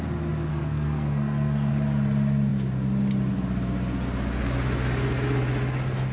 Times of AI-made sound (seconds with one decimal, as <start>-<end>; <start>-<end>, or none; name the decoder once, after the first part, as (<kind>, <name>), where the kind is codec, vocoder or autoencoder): 0.5-1.7 (codec, SNAC)